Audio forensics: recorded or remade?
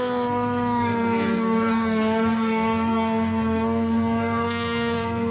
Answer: remade